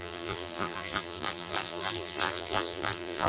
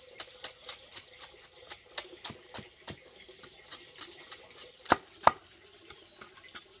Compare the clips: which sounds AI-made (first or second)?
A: first